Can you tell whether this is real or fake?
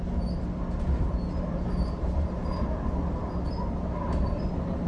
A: real